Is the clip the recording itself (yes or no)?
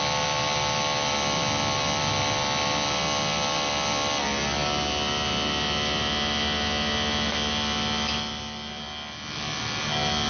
yes